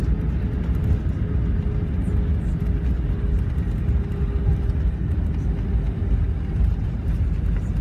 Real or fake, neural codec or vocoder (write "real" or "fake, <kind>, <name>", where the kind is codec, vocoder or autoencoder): real